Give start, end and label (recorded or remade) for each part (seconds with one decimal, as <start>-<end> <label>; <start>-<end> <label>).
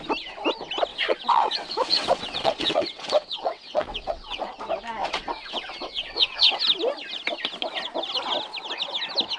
0.0-0.9 recorded; 0.9-4.5 remade; 4.5-5.0 recorded; 5.0-6.6 remade; 6.6-9.4 recorded